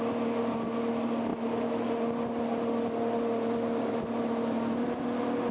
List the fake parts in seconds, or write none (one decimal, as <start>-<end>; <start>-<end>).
none